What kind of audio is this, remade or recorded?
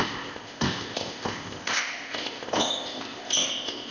remade